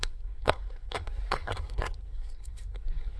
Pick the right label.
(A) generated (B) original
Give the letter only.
A